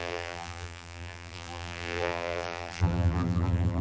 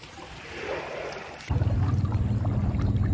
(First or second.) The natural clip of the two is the second